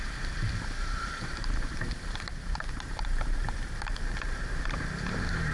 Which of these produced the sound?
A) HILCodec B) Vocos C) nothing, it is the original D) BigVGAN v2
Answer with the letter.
D